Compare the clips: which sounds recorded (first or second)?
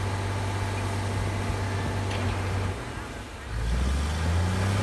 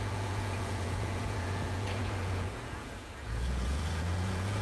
first